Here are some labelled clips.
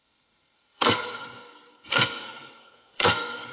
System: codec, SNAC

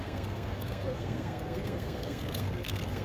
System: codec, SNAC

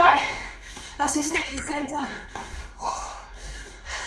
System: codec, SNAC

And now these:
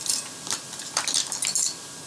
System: none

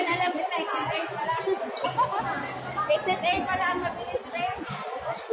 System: none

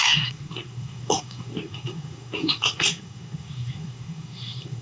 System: codec, SNAC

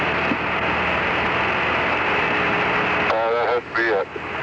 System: none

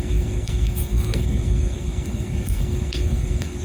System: codec, SNAC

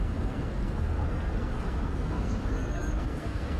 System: codec, SNAC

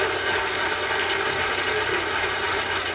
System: none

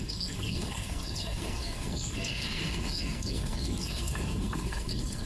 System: codec, SNAC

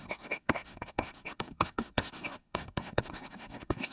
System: codec, SNAC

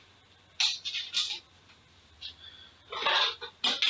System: none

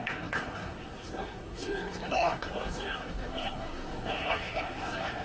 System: codec, SNAC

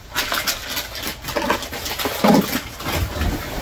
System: none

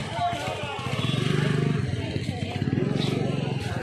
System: none